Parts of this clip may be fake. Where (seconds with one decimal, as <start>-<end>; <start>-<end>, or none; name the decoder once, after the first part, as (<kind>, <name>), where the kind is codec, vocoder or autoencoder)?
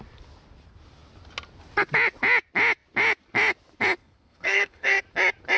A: 4.0-5.0 (codec, SNAC)